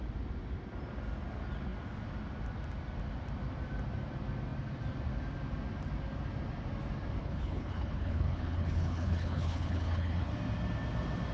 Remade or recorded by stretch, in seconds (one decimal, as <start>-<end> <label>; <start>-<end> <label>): 0.0-7.2 recorded; 7.2-10.3 remade; 10.3-11.3 recorded

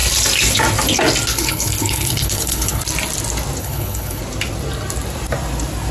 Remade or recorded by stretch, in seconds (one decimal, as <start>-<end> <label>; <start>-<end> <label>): 0.0-1.3 recorded; 1.3-2.8 remade; 2.8-3.6 recorded; 3.6-4.2 remade; 4.2-5.9 recorded

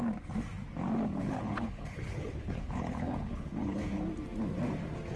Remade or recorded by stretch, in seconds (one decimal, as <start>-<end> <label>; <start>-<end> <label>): 0.0-1.2 recorded; 1.2-4.0 remade; 4.0-5.2 recorded

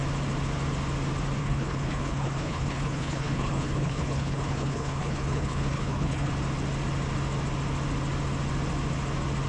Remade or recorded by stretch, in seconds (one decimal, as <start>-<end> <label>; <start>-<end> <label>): 0.0-1.4 recorded; 1.4-6.3 remade; 6.3-9.5 recorded

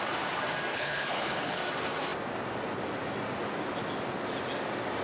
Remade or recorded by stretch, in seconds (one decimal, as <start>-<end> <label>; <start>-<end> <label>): 0.0-0.7 recorded; 0.7-1.6 remade; 1.6-5.0 recorded

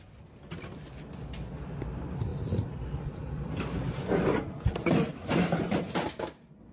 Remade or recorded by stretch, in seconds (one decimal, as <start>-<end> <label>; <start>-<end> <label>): 0.0-6.7 recorded